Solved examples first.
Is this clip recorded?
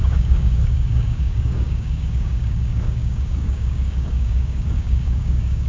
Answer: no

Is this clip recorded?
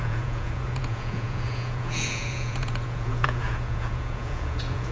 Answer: no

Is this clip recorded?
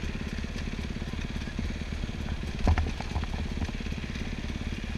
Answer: yes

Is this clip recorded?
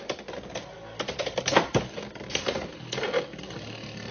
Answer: yes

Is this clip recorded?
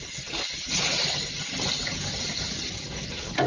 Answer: yes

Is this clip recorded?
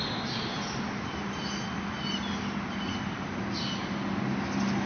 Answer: yes